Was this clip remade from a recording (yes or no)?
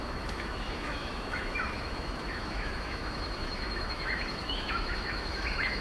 yes